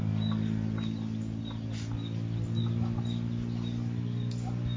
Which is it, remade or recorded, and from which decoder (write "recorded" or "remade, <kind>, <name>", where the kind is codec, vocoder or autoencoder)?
recorded